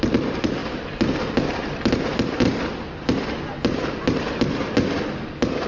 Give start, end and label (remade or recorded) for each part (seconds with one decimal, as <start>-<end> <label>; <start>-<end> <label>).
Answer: 0.0-5.7 recorded